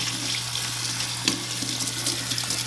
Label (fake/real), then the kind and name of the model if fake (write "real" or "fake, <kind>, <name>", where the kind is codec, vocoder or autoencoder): real